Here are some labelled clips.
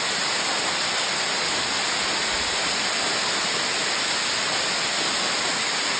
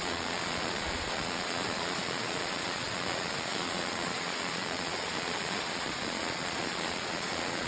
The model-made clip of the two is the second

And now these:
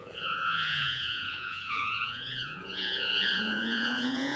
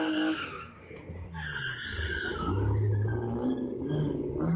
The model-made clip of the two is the first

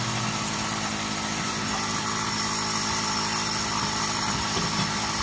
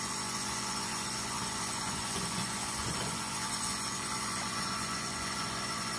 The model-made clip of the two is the second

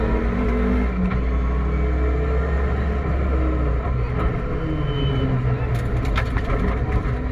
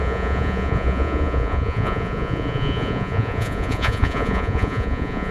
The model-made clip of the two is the second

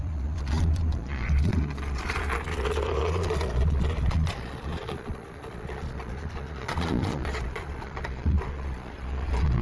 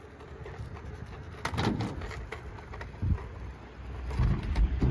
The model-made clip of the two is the first